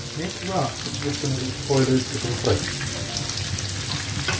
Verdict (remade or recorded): recorded